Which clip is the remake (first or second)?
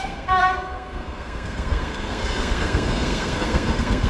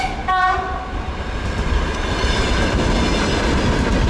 first